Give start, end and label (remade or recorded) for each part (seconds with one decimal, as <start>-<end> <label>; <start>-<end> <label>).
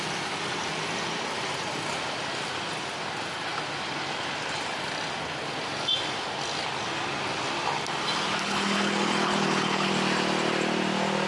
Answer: 0.0-8.4 recorded; 8.4-9.9 remade; 9.9-11.3 recorded